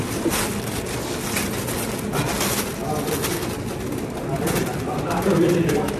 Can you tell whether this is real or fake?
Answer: real